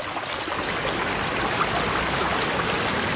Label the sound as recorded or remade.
recorded